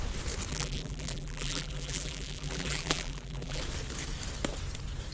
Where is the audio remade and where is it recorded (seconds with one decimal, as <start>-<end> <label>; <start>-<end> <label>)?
0.0-0.5 recorded; 0.5-3.6 remade; 3.6-5.1 recorded